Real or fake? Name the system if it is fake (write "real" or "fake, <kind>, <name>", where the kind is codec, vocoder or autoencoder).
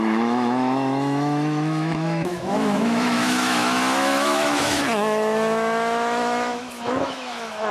fake, autoencoder, DAC-VAE